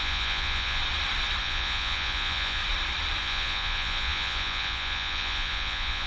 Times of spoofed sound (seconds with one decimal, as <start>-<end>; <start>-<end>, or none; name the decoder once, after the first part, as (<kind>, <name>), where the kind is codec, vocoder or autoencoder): 0.0-0.8 (vocoder, Vocos); 1.4-2.6; 3.2-6.1

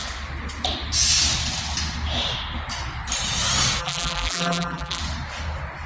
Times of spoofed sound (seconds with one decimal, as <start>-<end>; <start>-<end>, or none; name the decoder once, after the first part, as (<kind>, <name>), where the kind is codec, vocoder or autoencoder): 3.8-5.0 (vocoder, BigVGAN v2)